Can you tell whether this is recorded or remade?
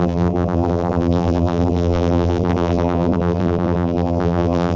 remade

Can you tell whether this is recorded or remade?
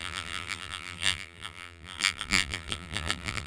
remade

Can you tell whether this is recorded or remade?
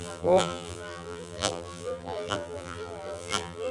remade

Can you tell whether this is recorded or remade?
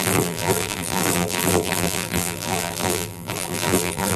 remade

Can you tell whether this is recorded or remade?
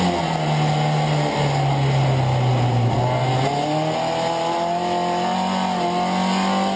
recorded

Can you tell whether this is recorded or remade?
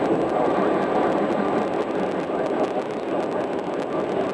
recorded